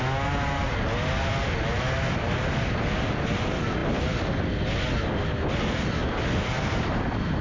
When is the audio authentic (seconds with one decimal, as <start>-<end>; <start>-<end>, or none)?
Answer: 0.0-0.6; 1.2-7.4